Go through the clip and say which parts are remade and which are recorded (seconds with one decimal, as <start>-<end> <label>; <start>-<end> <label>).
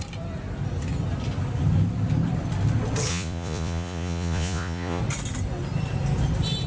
0.0-3.1 recorded; 3.1-5.0 remade; 5.0-6.7 recorded